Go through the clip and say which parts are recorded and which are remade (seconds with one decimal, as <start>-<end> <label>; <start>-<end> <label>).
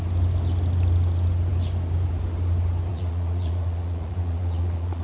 0.0-2.9 recorded; 2.9-5.0 remade